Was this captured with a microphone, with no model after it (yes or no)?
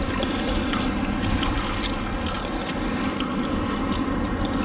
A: yes